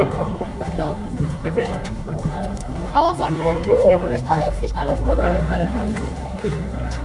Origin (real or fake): fake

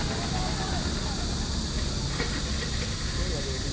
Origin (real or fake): real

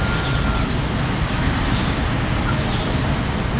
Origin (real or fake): real